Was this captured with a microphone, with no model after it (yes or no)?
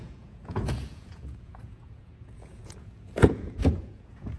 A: no